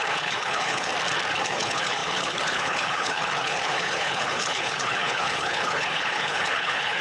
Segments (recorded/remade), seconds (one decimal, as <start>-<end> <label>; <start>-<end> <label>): 0.0-0.9 remade; 0.9-1.4 recorded; 1.4-7.0 remade